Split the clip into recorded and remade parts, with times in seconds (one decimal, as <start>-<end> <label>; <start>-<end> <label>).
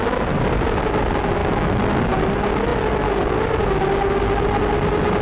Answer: 0.0-1.4 recorded; 1.4-2.0 remade; 2.0-5.2 recorded